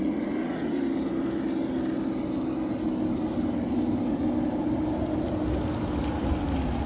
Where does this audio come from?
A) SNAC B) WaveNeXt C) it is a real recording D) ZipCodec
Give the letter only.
C